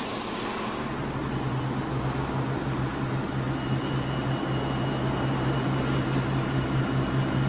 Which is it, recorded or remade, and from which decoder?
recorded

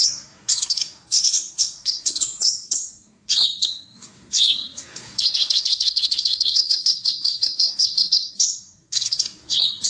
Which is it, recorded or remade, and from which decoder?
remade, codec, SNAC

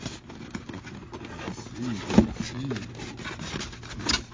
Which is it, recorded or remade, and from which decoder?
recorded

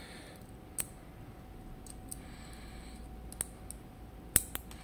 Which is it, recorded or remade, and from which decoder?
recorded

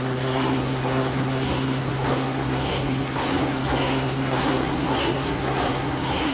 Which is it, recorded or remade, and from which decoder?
remade, codec, SNAC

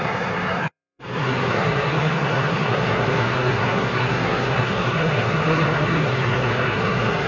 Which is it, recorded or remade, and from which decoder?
remade, codec, SNAC